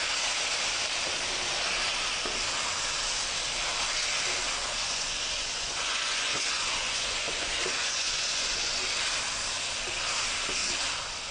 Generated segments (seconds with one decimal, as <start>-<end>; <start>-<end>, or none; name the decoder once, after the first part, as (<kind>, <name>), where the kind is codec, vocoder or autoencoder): 4.6-8.8 (vocoder, Vocos)